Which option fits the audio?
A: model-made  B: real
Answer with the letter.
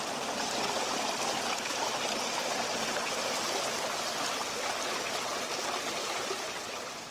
B